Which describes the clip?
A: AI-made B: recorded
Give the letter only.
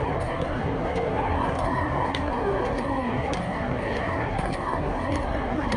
A